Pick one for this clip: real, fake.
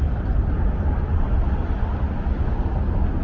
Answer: real